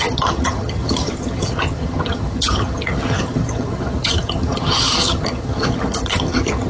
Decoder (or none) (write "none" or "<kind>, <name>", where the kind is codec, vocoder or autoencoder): vocoder, HiFi-GAN